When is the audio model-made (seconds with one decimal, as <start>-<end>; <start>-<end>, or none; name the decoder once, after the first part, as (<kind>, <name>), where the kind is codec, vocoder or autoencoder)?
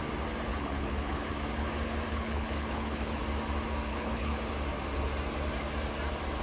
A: 0.5-1.3 (codec, HILCodec); 2.1-3.2; 3.9-4.5